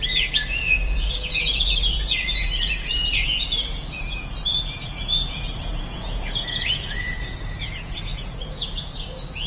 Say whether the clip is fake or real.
fake